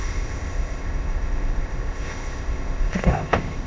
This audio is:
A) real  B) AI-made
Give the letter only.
B